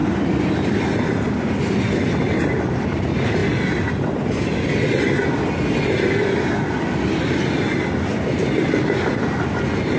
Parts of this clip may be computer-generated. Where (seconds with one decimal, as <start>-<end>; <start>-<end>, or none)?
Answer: none